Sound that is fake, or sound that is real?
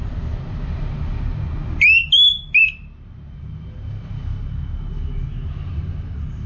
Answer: real